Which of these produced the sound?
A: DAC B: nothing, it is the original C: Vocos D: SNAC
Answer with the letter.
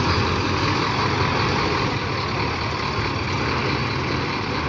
B